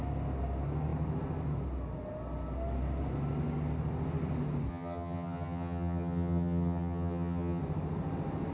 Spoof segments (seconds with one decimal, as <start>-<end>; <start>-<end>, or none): 4.7-7.6